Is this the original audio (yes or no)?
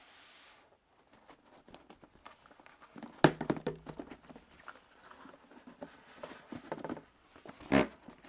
yes